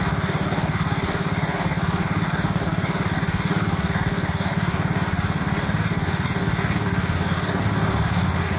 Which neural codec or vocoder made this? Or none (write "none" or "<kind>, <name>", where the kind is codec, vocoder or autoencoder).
codec, DAC